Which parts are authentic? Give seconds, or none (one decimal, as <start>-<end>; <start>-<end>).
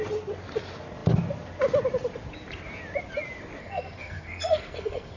0.0-3.6